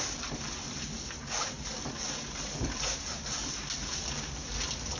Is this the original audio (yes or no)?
yes